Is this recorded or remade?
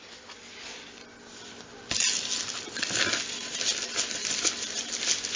recorded